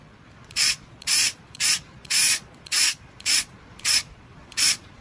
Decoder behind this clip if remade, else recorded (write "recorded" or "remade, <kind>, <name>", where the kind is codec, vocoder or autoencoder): remade, vocoder, Vocos